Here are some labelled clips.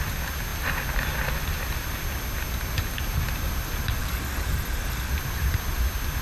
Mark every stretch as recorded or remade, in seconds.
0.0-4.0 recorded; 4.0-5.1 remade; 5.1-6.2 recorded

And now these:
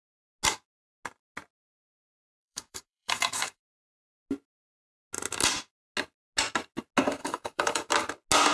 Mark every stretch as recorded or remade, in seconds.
0.0-2.2 recorded; 2.2-3.6 remade; 3.6-7.2 recorded; 7.2-7.9 remade; 7.9-8.5 recorded

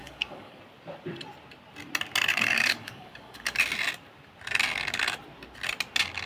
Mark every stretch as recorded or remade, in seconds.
0.0-0.6 remade; 0.6-2.3 recorded; 2.3-3.6 remade; 3.6-6.3 recorded